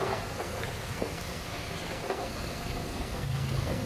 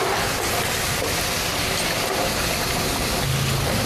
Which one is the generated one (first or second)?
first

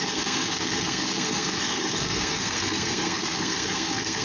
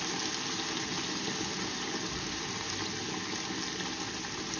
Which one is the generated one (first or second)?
first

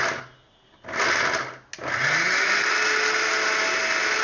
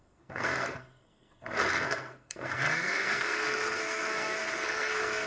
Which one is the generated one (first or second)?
second